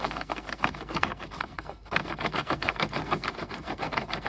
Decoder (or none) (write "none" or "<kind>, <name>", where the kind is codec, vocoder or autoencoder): codec, SNAC